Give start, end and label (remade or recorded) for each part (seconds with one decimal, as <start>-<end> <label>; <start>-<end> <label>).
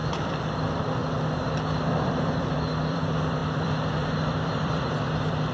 0.0-1.0 remade; 1.0-1.9 recorded; 1.9-5.5 remade